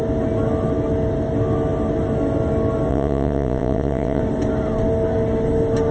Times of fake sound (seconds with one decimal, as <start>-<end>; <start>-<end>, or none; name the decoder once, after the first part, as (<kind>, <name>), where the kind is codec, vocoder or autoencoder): 2.9-4.2 (vocoder, WaveNeXt)